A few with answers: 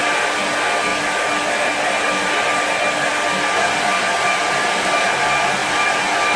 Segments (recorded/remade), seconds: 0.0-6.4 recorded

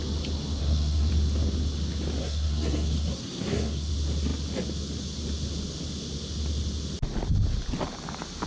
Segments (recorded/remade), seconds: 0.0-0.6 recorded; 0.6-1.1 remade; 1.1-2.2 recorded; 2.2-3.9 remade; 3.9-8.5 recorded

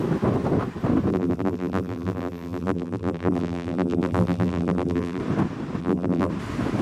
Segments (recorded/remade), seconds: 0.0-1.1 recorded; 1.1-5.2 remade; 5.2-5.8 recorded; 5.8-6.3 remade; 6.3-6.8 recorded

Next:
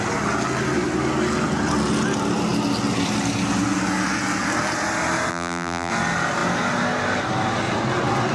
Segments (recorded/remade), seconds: 0.0-5.3 recorded; 5.3-5.9 remade; 5.9-8.3 recorded

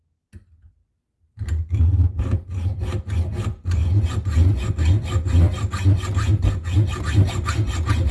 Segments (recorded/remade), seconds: 0.0-8.1 recorded

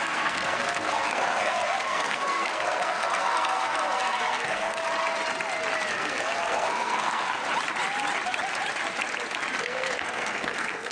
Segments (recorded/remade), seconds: 0.0-4.8 remade; 4.8-5.9 recorded; 5.9-7.4 remade; 7.4-9.6 recorded; 9.6-10.9 remade